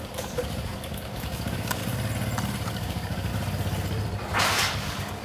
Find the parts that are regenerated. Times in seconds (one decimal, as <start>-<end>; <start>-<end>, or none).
0.0-1.8; 2.7-3.3; 4.4-5.2